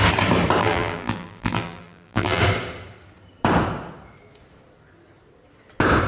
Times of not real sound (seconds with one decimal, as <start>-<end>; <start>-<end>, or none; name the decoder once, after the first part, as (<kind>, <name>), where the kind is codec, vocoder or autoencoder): 0.6-2.4 (vocoder, BigVGAN v2)